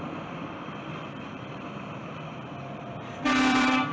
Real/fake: fake